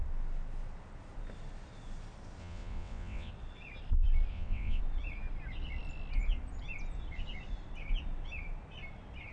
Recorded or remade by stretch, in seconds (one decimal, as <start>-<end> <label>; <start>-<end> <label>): 0.0-2.4 recorded; 2.4-3.3 remade; 3.3-4.3 recorded; 4.3-4.8 remade; 4.8-9.3 recorded